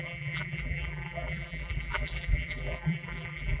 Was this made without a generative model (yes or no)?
no